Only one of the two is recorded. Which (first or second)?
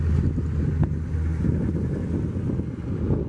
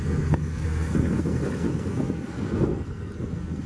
first